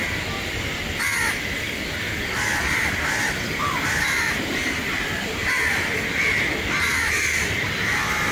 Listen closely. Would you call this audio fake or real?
real